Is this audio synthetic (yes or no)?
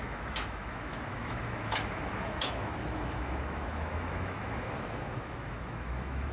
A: yes